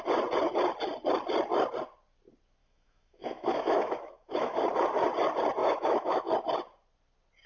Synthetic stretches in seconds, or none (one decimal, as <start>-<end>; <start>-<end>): 2.6-4.6; 5.6-6.3